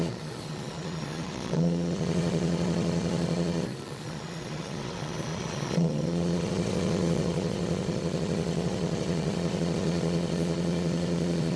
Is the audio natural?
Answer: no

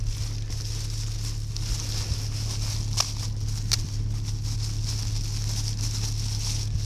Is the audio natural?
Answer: yes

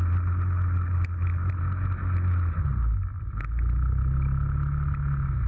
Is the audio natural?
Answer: yes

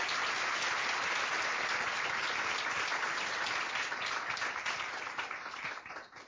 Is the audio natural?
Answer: yes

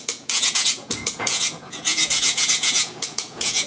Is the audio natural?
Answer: no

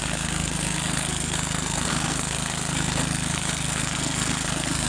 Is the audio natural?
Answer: no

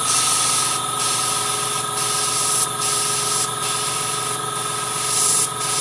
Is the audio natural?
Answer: yes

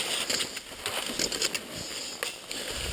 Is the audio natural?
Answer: yes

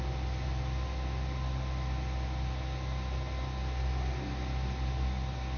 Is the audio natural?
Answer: yes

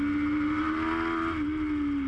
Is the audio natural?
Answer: yes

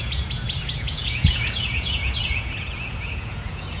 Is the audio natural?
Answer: no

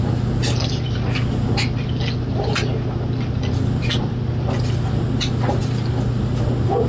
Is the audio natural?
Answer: yes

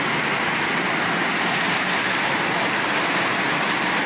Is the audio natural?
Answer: yes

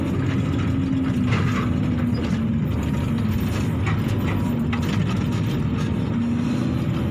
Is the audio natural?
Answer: yes